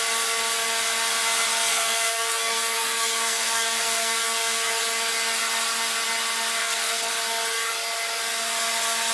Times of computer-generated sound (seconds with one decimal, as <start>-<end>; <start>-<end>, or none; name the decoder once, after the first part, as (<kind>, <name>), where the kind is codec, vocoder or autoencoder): 1.7-4.8 (codec, SNAC); 6.6-7.1